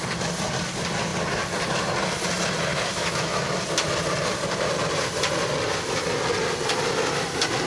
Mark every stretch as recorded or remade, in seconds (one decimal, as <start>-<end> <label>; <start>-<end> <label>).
0.0-2.9 recorded; 2.9-3.6 remade; 3.6-7.7 recorded